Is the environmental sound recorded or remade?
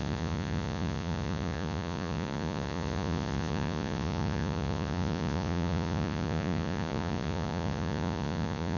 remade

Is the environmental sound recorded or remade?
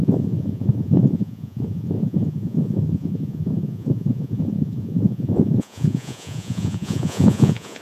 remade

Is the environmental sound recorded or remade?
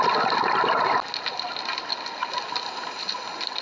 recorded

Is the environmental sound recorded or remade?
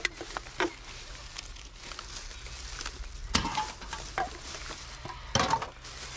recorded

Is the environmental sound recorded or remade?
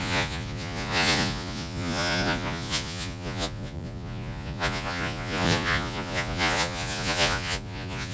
remade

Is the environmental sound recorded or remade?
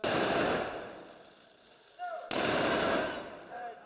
recorded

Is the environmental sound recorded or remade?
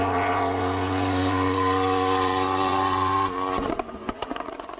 remade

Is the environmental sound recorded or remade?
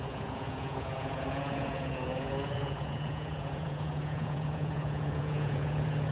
remade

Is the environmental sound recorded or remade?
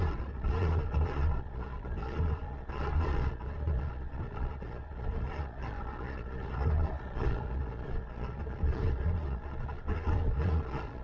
remade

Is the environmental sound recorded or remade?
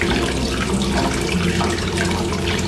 recorded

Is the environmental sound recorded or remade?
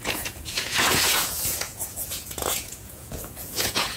remade